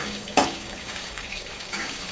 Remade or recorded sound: remade